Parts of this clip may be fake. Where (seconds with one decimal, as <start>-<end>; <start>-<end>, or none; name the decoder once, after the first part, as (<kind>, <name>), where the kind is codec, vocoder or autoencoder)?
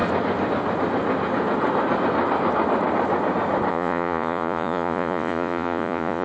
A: 3.7-6.2 (vocoder, Vocos)